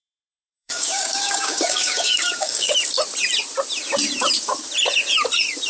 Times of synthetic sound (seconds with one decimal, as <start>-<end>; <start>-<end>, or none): 0.0-2.7